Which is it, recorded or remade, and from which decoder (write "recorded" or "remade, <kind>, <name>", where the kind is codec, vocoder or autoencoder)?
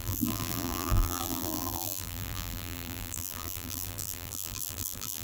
remade, vocoder, BigVGAN v2